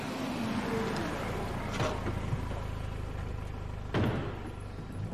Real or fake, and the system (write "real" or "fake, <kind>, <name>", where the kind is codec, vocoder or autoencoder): real